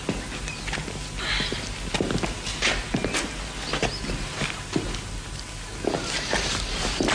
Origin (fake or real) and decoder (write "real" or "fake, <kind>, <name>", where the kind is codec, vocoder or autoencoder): real